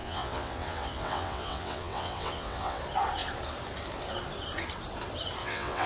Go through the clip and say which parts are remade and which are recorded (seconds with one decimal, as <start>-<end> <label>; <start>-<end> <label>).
0.0-2.8 remade; 2.8-5.4 recorded; 5.4-5.9 remade